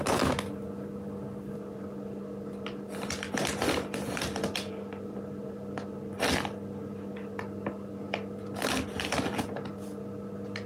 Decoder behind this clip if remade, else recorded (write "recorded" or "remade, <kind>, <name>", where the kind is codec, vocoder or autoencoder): recorded